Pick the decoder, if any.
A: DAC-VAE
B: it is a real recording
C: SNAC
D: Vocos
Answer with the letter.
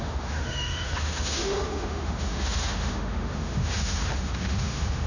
A